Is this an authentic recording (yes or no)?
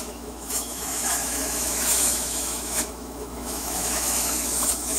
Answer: no